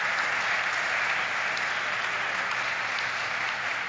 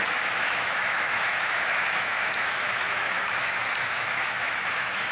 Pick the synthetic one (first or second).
second